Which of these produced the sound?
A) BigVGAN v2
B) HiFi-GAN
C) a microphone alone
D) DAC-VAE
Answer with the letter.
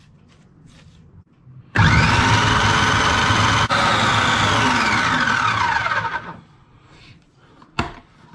C